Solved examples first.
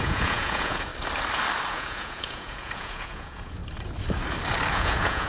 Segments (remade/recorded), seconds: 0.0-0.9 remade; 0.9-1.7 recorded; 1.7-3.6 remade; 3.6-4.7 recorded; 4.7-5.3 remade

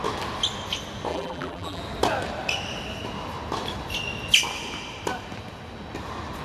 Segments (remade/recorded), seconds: 0.0-1.1 recorded; 1.1-1.8 remade; 1.8-6.4 recorded